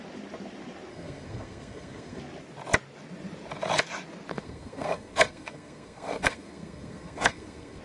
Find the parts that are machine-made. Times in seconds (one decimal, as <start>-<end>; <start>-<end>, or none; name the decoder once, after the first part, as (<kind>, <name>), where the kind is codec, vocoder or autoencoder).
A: 0.9-2.2 (codec, SNAC); 4.3-7.8